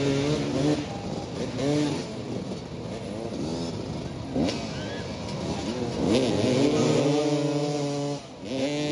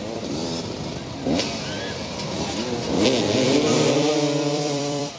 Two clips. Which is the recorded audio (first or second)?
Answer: first